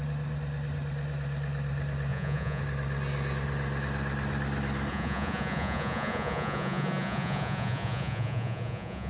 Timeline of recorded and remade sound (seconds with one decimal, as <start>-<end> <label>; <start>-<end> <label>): 0.0-2.1 recorded; 2.1-2.6 remade; 2.6-4.9 recorded; 4.9-9.1 remade